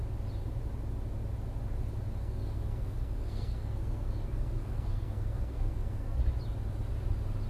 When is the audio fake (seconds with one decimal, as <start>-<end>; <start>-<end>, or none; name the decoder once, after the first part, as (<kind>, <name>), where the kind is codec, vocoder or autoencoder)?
2.2-6.2 (codec, SNAC)